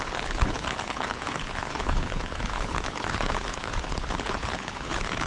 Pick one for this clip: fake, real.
fake